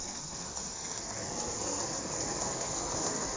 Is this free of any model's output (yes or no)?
no